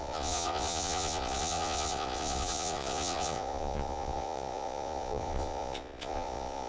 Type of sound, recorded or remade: remade